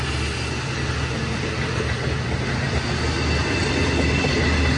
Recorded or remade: recorded